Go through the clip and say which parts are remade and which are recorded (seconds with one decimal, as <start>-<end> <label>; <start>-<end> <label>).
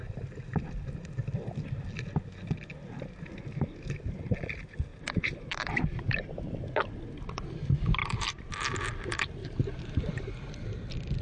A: 0.0-4.9 recorded; 4.9-6.6 remade; 6.6-8.0 recorded; 8.0-8.5 remade; 8.5-9.4 recorded; 9.4-10.2 remade; 10.2-11.2 recorded